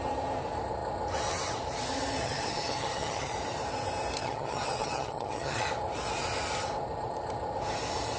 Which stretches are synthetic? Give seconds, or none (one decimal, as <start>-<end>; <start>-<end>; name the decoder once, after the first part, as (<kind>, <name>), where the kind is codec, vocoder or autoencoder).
2.2-3.3 (vocoder, HiFi-GAN); 4.2-5.7